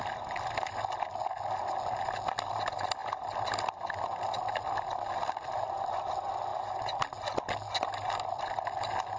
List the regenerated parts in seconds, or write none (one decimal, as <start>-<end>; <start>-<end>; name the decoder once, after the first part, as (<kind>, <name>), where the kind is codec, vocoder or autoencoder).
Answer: none